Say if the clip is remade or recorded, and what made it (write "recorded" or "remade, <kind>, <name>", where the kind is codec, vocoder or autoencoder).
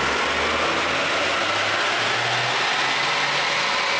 recorded